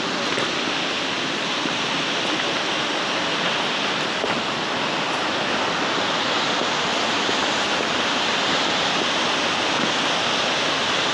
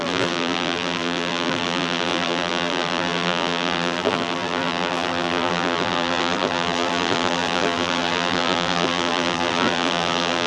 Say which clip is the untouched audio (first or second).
first